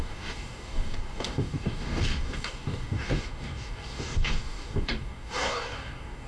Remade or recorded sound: remade